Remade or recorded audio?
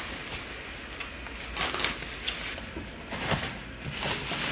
recorded